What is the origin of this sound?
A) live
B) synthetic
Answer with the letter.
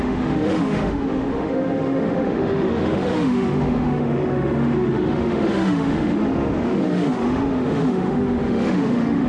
B